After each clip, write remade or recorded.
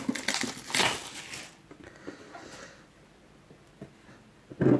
recorded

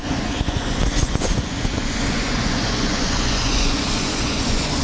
remade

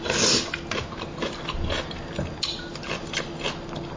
recorded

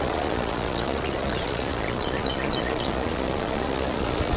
remade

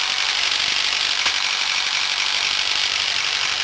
recorded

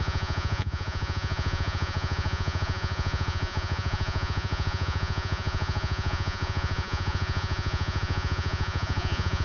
remade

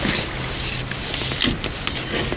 recorded